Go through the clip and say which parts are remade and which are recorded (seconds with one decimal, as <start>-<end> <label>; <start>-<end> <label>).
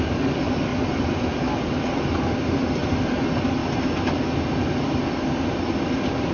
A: 0.0-6.3 recorded